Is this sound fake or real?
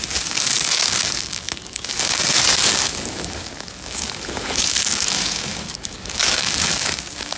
fake